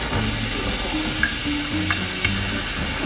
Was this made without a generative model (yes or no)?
yes